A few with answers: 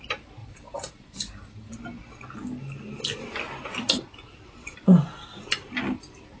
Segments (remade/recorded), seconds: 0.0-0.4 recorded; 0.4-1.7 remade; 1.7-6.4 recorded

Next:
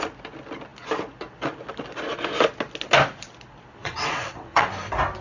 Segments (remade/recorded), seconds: 0.0-3.8 recorded; 3.8-4.7 remade; 4.7-5.2 recorded